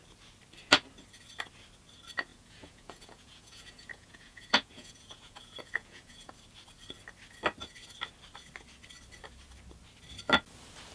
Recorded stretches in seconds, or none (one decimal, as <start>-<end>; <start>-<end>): 0.0-2.3; 6.3-10.9